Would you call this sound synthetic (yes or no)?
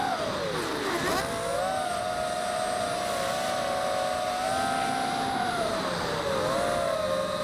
no